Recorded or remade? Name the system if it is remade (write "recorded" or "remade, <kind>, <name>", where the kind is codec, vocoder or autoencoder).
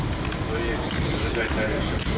recorded